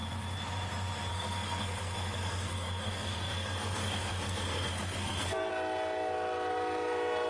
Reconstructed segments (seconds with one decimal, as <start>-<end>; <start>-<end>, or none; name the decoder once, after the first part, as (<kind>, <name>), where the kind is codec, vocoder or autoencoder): 1.1-5.5 (codec, SNAC)